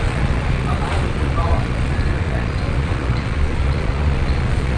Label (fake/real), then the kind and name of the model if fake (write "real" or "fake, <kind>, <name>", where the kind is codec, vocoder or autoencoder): fake, vocoder, Vocos